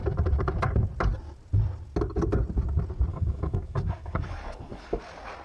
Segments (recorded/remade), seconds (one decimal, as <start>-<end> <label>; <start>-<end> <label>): 0.0-3.1 recorded; 3.1-5.0 remade; 5.0-5.4 recorded